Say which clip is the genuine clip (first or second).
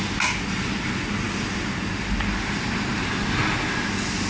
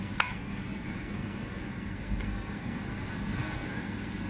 first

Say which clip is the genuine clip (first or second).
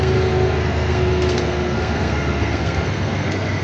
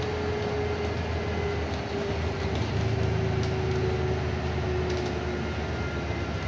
second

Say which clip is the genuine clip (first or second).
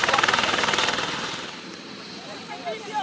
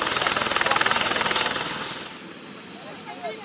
second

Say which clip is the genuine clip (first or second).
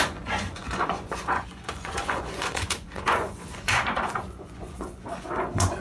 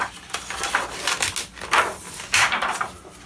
second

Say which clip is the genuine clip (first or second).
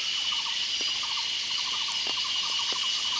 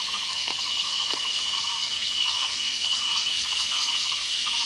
first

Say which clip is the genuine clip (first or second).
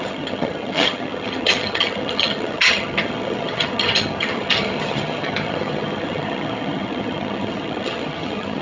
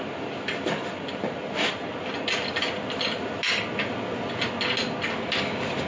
second